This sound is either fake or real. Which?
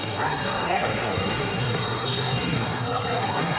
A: fake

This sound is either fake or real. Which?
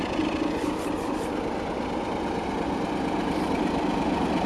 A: real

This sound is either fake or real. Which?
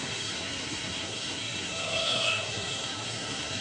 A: fake